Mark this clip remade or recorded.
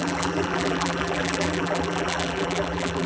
remade